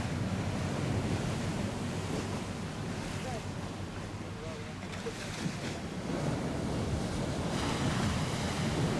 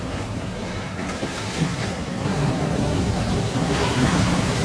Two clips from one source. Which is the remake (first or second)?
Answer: second